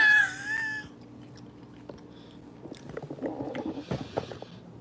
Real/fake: real